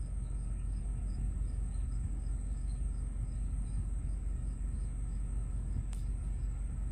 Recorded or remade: remade